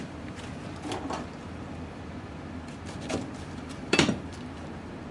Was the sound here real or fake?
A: fake